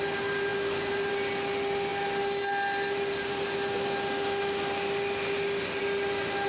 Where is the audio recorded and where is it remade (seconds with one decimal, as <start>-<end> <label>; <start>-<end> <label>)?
0.0-6.5 recorded